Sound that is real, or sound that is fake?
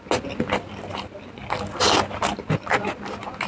real